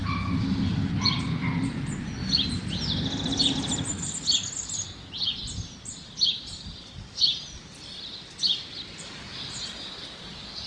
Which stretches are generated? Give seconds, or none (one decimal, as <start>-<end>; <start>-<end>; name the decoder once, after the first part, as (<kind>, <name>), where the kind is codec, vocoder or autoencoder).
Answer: none